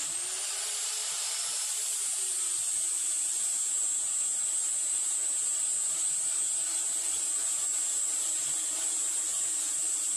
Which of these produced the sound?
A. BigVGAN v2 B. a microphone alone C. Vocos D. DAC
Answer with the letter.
B